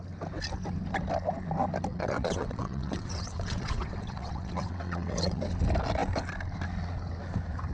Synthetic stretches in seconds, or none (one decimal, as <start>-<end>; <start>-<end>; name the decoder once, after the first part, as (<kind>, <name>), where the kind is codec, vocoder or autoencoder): 1.9-5.4 (vocoder, WaveNeXt)